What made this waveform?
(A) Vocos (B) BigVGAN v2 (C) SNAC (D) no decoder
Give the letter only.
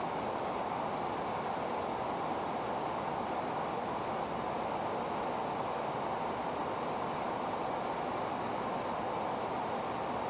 D